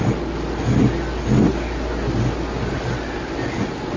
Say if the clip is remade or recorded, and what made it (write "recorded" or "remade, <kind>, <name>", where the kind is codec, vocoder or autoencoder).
recorded